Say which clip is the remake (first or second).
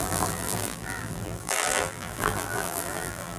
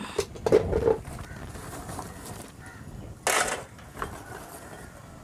first